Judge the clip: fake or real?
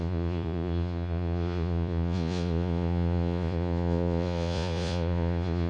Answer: fake